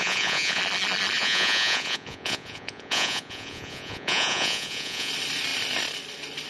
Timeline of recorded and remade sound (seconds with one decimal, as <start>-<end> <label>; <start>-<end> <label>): 0.0-0.6 remade; 0.6-1.2 recorded; 1.2-5.1 remade; 5.1-6.5 recorded